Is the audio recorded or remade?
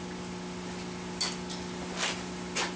recorded